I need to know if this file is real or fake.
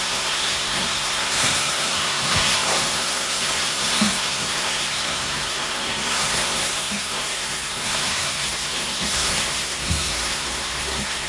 fake